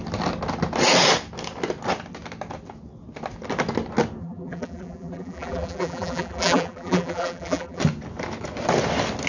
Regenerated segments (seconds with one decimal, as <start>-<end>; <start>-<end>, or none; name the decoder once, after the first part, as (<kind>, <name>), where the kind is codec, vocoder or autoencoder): 4.2-7.8 (vocoder, BigVGAN v2)